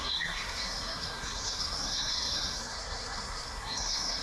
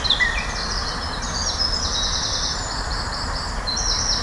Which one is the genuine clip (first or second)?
second